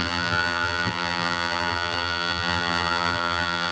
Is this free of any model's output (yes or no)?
no